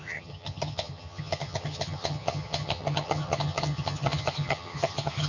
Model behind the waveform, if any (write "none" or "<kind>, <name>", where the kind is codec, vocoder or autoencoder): vocoder, HiFi-GAN